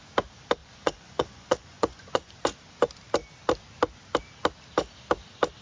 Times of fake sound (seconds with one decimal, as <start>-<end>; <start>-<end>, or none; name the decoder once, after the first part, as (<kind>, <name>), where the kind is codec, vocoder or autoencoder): 0.6-2.3 (vocoder, Vocos)